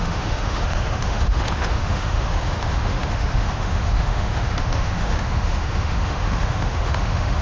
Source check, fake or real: fake